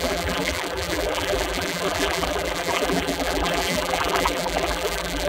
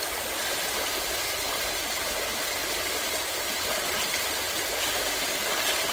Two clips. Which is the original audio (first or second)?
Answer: second